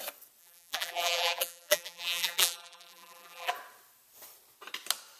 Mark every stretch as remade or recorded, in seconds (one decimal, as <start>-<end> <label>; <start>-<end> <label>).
0.0-0.4 recorded; 0.4-3.5 remade; 3.5-5.2 recorded

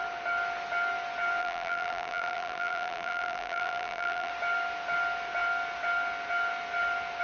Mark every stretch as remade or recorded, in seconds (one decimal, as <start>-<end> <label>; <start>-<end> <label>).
0.0-1.4 recorded; 1.4-4.3 remade; 4.3-7.2 recorded

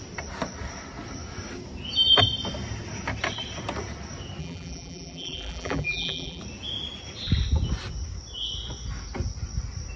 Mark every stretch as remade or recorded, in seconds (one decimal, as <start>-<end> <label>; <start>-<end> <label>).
0.0-4.4 recorded; 4.4-6.4 remade; 6.4-10.0 recorded

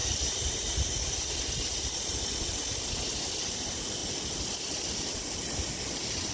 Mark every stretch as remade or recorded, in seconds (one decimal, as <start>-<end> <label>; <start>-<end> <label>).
0.0-4.0 recorded; 4.0-6.3 remade